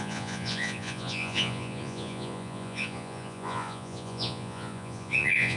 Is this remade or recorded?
remade